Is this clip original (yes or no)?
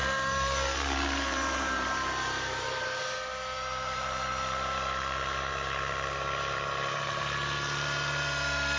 no